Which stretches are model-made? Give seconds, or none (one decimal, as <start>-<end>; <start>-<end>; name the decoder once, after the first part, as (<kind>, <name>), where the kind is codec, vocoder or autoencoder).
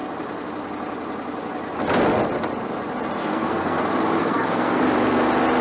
3.2-3.8 (codec, SNAC); 4.2-4.8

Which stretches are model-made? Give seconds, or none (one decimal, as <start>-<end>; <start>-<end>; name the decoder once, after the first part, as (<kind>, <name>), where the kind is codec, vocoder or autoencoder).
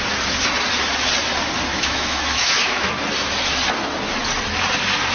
1.7-2.9 (autoencoder, DAC-VAE)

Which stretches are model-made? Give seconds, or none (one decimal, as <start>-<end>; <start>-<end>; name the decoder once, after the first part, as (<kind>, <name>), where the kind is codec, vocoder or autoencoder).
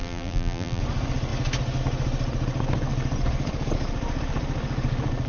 0.0-0.8 (vocoder, BigVGAN v2)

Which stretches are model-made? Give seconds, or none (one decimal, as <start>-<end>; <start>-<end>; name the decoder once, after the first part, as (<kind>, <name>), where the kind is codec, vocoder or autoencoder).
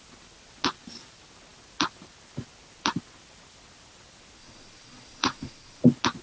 4.4-5.8 (vocoder, Vocos)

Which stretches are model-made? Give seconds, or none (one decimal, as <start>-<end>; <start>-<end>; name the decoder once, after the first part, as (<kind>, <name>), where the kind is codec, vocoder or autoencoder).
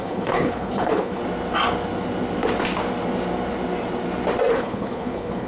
0.0-1.2 (codec, HILCodec); 4.5-5.5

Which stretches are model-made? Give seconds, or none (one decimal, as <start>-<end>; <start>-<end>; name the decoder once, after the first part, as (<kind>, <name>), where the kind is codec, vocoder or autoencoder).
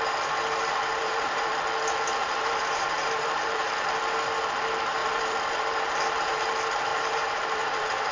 1.0-1.5 (vocoder, BigVGAN v2); 2.2-3.7; 5.0-6.4; 6.9-8.1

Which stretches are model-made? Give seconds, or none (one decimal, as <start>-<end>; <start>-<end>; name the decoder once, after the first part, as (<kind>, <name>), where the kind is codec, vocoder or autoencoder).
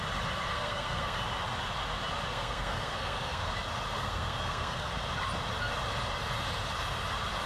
0.5-1.2 (codec, SNAC); 2.3-3.5; 4.0-4.9